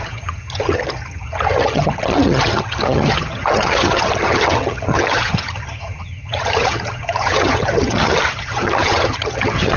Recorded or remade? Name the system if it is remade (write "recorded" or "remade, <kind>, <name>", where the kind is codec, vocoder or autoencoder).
remade, vocoder, HiFi-GAN